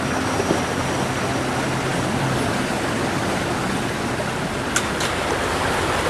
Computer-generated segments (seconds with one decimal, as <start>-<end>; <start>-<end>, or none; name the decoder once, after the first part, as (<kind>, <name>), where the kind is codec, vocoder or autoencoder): none

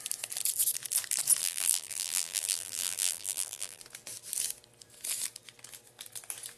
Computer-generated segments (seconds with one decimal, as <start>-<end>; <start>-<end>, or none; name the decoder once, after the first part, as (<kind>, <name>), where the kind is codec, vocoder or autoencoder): 1.4-3.8 (vocoder, BigVGAN v2)

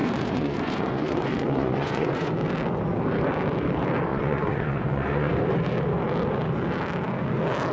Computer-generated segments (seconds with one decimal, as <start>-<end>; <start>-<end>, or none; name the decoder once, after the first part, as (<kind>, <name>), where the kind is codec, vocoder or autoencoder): 0.0-2.3 (vocoder, Vocos); 4.1-5.3

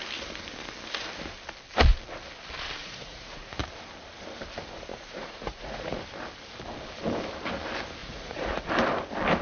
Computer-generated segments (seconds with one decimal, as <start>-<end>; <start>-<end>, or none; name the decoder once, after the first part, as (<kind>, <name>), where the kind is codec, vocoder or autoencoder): 2.8-3.6 (vocoder, Vocos); 4.9-6.0; 8.0-8.7

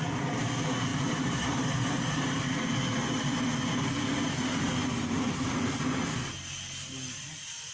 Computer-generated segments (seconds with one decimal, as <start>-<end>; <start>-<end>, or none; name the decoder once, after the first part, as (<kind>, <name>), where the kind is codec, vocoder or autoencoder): 0.9-2.5 (vocoder, BigVGAN v2); 4.8-5.8